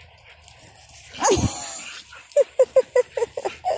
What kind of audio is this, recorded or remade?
recorded